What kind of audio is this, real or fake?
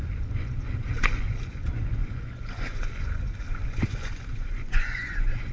fake